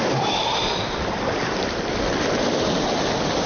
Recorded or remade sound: recorded